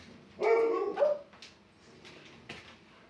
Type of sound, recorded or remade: recorded